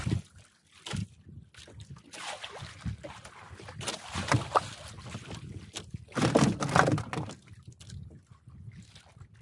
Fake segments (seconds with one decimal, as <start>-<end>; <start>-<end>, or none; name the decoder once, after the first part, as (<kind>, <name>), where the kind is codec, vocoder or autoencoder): none